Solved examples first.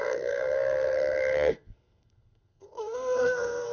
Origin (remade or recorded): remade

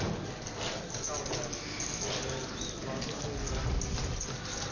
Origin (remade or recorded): recorded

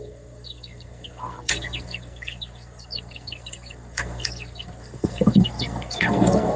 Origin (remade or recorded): remade